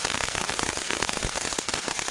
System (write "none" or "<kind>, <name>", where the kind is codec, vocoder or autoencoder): codec, SNAC